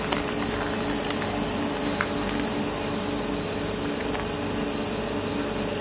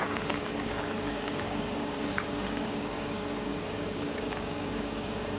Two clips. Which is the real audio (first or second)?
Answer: first